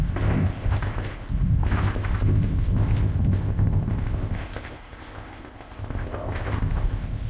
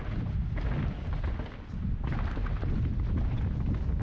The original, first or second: second